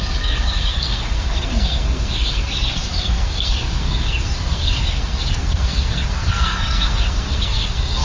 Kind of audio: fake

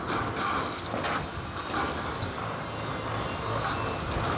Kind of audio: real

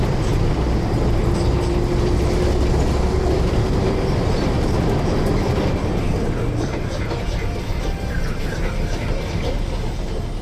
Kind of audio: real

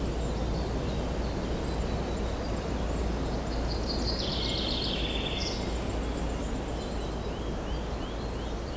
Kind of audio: real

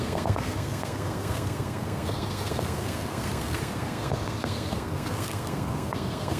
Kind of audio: fake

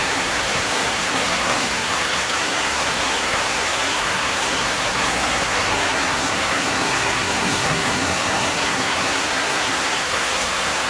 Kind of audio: fake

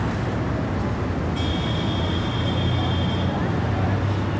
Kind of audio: real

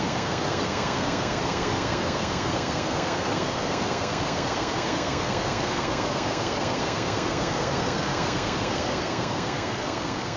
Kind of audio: fake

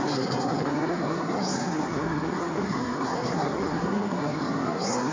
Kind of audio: fake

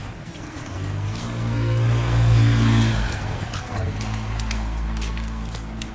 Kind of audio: fake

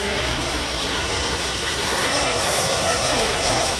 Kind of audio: fake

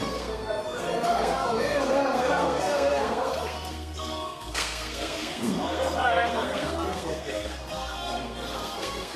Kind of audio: fake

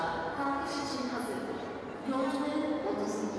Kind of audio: real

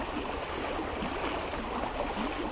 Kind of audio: real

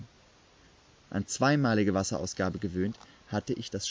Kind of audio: real